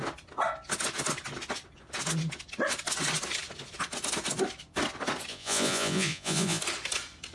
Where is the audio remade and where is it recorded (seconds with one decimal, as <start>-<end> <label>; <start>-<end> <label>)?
0.0-5.3 recorded; 5.3-6.6 remade; 6.6-7.3 recorded